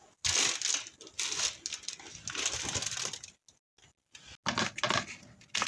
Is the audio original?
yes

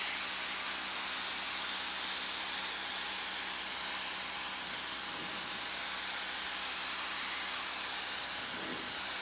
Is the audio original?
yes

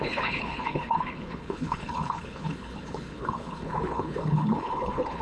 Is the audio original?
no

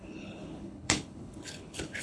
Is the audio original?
no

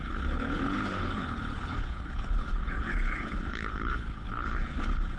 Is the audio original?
no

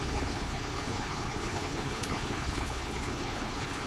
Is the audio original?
no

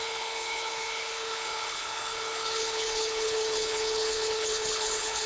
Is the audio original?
no